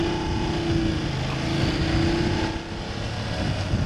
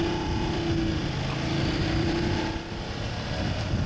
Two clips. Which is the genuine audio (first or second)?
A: first